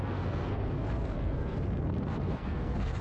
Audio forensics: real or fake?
fake